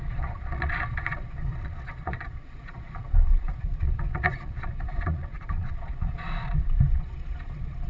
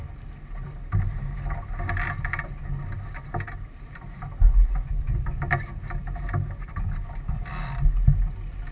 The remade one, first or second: first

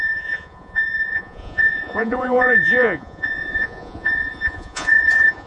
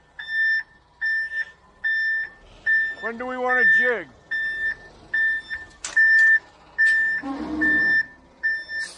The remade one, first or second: first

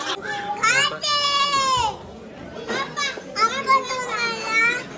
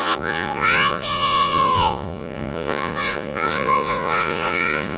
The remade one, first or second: second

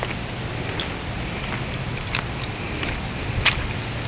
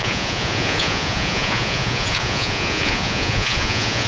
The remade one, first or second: second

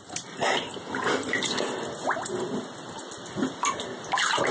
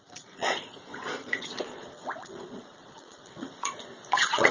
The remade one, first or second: second